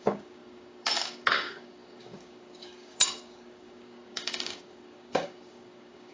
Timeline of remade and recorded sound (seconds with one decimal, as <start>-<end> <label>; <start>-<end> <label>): 0.0-6.1 remade